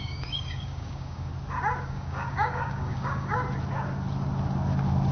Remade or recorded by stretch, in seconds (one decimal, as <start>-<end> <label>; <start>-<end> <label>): 0.0-1.3 remade; 1.3-1.8 recorded; 1.8-3.4 remade; 3.4-5.1 recorded